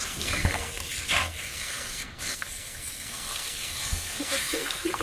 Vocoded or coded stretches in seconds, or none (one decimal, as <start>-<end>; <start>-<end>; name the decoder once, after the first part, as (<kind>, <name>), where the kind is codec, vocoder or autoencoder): 0.0-5.0 (codec, SNAC)